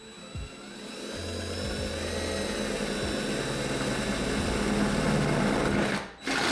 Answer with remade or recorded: recorded